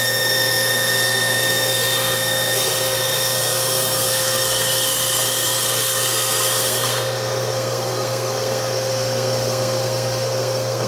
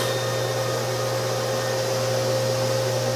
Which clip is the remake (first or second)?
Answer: first